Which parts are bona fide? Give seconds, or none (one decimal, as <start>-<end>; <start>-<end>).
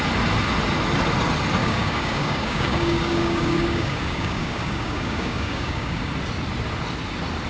0.0-1.6; 6.1-7.5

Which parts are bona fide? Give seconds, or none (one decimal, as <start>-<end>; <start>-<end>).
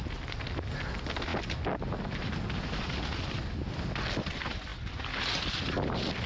0.0-6.3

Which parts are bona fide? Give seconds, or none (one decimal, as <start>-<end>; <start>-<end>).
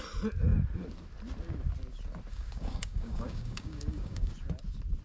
0.0-2.3; 4.3-5.0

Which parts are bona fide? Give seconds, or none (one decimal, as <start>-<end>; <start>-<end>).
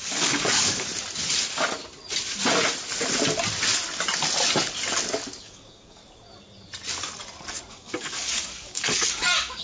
0.9-5.4; 6.0-7.7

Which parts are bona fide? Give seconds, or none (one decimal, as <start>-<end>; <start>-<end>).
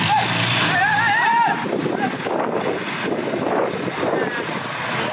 0.0-5.1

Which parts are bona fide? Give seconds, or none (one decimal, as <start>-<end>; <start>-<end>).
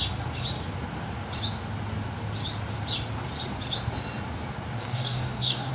0.0-4.8